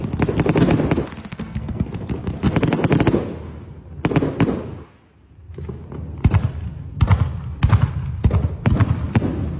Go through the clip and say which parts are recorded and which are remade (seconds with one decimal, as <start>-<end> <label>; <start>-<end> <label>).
0.0-1.3 recorded; 1.3-1.9 remade; 1.9-9.6 recorded